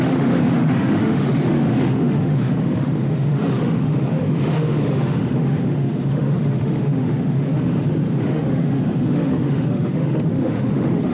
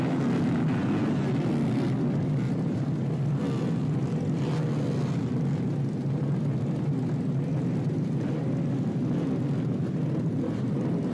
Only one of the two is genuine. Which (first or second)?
second